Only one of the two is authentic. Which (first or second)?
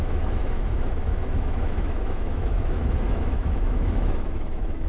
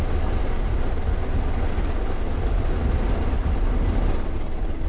second